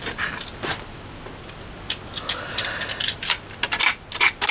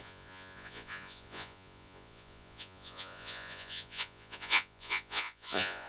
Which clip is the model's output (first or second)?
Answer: second